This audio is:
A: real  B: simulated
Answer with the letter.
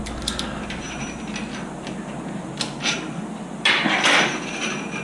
A